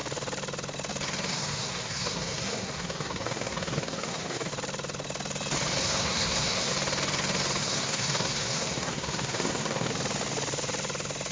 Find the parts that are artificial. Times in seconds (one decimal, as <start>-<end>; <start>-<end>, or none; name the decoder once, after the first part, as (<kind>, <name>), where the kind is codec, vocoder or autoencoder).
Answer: 1.3-4.5 (codec, SNAC); 5.8-6.7; 7.6-9.9